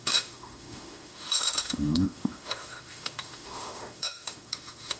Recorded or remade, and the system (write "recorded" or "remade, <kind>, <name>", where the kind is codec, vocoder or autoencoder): remade, autoencoder, DAC-VAE